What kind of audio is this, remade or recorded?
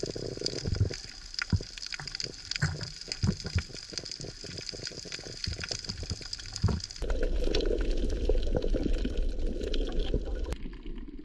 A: recorded